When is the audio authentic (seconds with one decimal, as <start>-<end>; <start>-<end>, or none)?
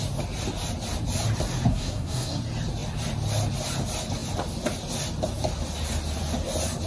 0.0-1.7; 2.4-6.9